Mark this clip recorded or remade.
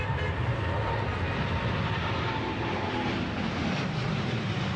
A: recorded